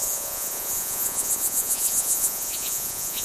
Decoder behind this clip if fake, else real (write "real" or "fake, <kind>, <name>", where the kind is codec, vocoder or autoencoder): fake, vocoder, Vocos